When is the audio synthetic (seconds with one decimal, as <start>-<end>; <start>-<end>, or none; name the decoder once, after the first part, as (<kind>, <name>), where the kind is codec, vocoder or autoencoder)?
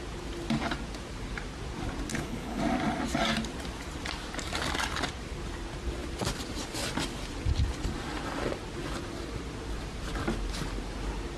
2.1-2.6 (codec, HILCodec)